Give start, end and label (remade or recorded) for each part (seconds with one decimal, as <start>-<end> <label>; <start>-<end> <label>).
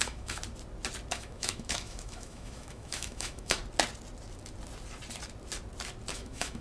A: 0.0-0.4 remade; 0.4-1.1 recorded; 1.1-3.6 remade; 3.6-6.1 recorded; 6.1-6.6 remade